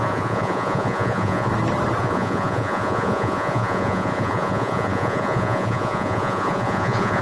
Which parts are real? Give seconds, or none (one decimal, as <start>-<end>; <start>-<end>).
1.5-2.0